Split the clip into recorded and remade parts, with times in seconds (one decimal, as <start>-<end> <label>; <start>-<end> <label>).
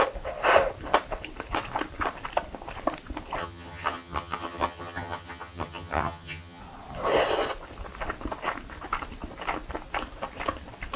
0.0-3.4 recorded; 3.4-6.6 remade; 6.6-11.0 recorded